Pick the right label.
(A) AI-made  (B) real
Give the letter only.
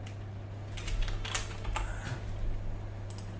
B